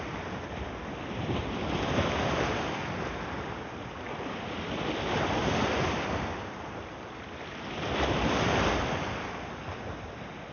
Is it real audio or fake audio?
real